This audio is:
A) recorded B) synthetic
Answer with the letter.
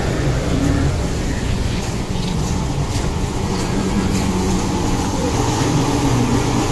B